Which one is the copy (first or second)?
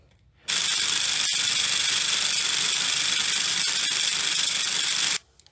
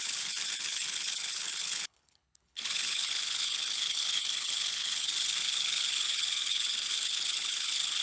second